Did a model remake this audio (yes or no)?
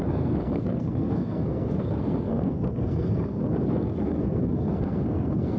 yes